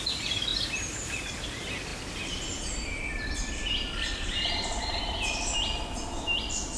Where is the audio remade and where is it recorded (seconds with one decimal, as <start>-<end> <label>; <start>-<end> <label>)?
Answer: 0.0-6.8 recorded